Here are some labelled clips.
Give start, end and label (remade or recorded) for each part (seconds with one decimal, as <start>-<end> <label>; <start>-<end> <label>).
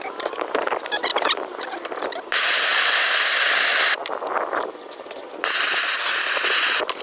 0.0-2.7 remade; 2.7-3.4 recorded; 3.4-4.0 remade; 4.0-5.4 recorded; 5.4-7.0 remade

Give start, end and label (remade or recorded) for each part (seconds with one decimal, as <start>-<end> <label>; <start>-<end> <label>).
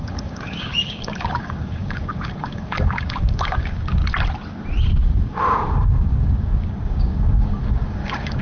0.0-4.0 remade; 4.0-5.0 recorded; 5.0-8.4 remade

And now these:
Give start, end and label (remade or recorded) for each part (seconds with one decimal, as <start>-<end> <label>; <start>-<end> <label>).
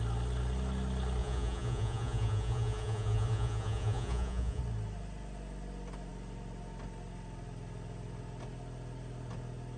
0.0-1.2 recorded; 1.2-4.6 remade; 4.6-9.8 recorded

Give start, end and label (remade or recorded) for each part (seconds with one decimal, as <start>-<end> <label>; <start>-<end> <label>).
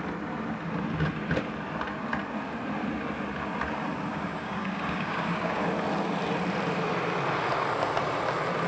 0.0-4.1 recorded; 4.1-5.7 remade; 5.7-8.7 recorded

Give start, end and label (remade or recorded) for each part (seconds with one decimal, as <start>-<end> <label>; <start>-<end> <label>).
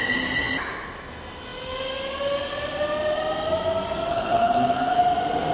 0.0-4.1 recorded; 4.1-5.0 remade; 5.0-5.5 recorded